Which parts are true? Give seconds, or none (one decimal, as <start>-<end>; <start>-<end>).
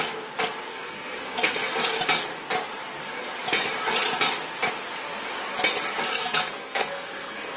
0.0-0.7; 1.7-6.1